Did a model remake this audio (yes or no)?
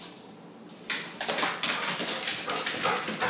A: no